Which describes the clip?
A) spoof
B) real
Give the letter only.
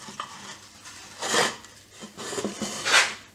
B